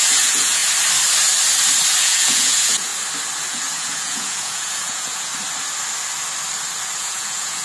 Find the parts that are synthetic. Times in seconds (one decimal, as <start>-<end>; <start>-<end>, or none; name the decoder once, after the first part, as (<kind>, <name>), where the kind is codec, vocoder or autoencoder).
0.0-0.6 (vocoder, Vocos); 2.0-2.9; 3.5-5.3; 7.0-7.6